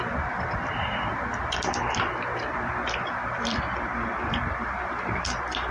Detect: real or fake fake